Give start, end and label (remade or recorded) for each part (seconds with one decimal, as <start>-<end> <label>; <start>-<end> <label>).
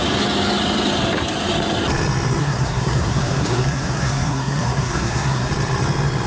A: 0.0-2.4 recorded; 2.4-5.5 remade; 5.5-6.3 recorded